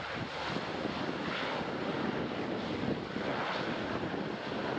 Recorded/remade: recorded